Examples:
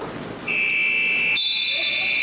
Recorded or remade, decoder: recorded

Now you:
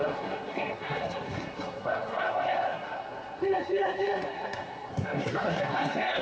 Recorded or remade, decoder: remade, codec, SNAC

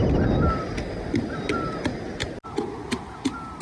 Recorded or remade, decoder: recorded